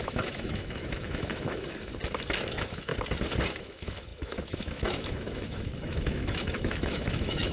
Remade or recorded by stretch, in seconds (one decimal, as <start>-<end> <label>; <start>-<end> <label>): 0.0-1.9 remade; 1.9-2.5 recorded; 2.5-2.9 remade; 2.9-3.6 recorded; 3.6-7.5 remade